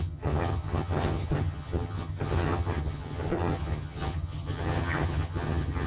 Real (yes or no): no